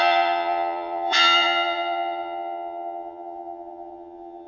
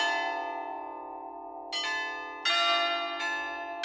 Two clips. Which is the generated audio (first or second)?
first